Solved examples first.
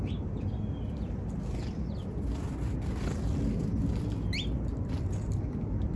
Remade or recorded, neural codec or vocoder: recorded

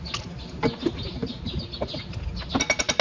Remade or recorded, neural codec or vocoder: recorded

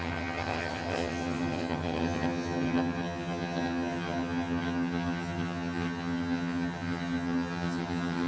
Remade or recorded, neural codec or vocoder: remade, vocoder, HiFi-GAN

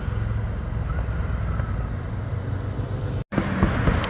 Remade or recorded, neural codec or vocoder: recorded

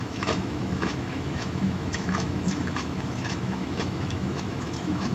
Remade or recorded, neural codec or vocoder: remade, autoencoder, DAC-VAE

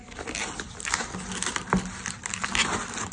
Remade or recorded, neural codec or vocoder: recorded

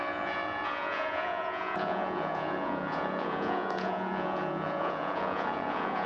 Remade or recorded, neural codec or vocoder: remade, vocoder, Vocos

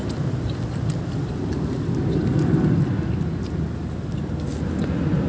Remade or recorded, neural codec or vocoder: recorded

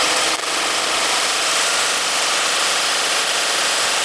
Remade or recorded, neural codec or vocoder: recorded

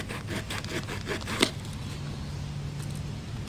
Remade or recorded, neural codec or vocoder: recorded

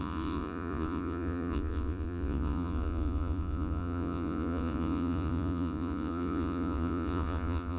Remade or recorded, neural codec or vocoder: remade, vocoder, Vocos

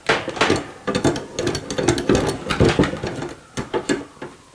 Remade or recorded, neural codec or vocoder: recorded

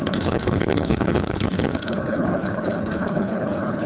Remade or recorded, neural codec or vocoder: remade, codec, HILCodec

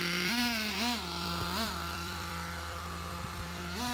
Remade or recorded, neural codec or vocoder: remade, vocoder, BigVGAN v2